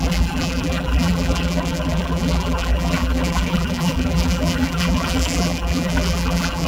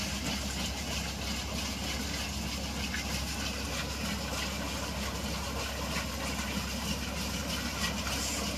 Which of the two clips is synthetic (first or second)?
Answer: first